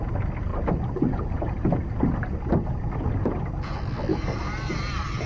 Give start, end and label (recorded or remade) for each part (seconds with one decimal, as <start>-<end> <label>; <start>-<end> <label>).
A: 0.0-0.5 recorded; 0.5-1.7 remade; 1.7-4.1 recorded; 4.1-5.3 remade